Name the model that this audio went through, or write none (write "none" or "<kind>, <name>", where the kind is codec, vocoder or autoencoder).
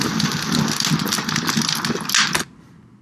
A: none